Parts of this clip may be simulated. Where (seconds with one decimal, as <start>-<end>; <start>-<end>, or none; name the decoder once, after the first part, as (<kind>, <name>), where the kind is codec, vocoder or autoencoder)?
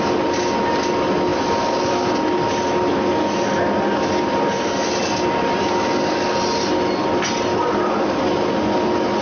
none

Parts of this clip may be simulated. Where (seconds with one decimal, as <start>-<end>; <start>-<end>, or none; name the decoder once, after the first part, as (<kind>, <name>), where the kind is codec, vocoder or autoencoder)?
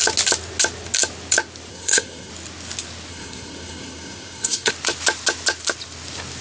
1.7-2.3 (codec, SNAC); 3.1-4.7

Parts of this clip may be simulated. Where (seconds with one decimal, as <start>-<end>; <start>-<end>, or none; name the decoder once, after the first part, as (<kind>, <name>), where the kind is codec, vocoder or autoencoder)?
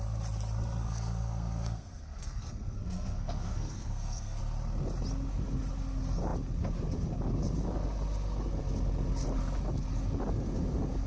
0.8-4.4 (codec, SNAC)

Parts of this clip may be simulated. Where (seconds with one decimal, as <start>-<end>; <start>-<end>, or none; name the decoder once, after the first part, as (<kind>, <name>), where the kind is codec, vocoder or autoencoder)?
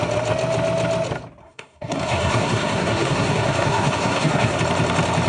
1.4-4.6 (codec, SNAC)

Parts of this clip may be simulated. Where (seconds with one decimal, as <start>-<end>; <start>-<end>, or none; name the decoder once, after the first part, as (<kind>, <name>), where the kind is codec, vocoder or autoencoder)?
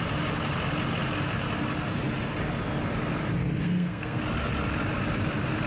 3.4-4.2 (codec, SNAC)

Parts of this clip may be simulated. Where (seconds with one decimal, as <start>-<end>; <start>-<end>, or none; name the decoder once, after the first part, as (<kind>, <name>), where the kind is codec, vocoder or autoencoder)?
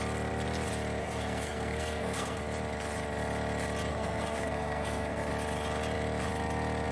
1.0-2.4 (codec, SNAC); 3.9-5.3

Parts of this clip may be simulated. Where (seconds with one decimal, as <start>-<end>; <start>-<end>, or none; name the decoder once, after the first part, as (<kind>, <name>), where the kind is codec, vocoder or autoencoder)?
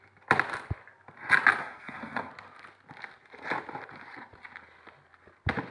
1.6-2.3 (codec, SNAC)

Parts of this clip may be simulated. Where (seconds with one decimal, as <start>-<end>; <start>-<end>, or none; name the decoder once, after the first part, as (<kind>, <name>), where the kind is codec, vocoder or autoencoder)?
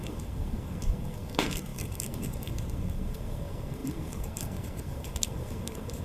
0.0-6.0 (codec, SNAC)